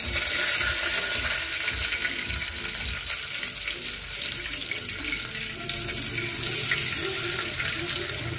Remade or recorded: recorded